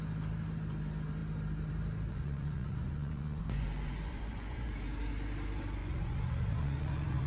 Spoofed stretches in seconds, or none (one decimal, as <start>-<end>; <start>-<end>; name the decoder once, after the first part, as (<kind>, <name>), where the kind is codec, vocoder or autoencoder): 2.1-4.7 (vocoder, Vocos); 5.8-7.3

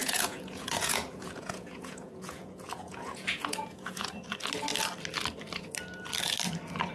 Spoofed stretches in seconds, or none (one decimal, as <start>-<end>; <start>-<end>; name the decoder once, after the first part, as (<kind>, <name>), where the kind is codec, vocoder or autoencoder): 0.0-4.1 (vocoder, Vocos)

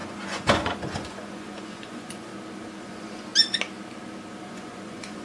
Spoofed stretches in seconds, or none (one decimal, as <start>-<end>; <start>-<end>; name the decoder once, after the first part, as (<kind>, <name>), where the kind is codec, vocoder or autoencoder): 0.0-2.3 (vocoder, Vocos); 2.8-3.3; 4.5-5.2

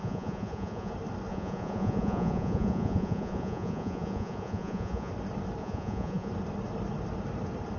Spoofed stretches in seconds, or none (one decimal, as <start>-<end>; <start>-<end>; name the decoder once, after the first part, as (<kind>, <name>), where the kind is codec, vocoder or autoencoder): 0.0-0.9 (vocoder, Vocos); 1.3-5.1; 5.6-6.3

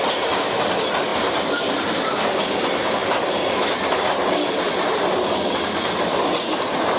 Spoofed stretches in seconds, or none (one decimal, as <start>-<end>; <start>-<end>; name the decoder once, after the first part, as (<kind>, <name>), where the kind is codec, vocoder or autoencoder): none

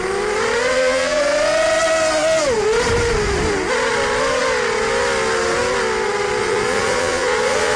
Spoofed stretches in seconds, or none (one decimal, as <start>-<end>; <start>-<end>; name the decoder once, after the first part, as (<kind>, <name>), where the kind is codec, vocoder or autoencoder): 0.7-1.2 (vocoder, Vocos); 6.4-7.8